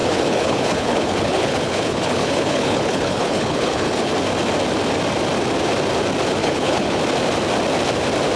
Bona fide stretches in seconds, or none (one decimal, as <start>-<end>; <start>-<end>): 4.1-6.4; 7.0-8.4